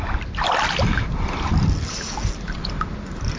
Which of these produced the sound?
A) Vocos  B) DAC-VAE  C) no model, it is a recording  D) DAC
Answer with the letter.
C